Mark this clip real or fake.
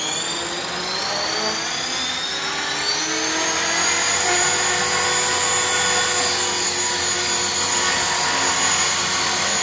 real